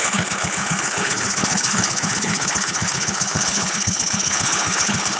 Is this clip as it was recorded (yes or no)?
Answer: no